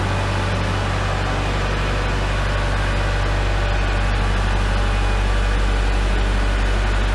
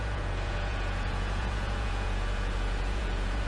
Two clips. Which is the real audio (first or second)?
first